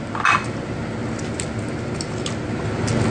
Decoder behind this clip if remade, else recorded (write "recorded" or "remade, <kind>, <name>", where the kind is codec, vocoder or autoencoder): recorded